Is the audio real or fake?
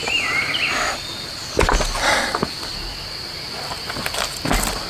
real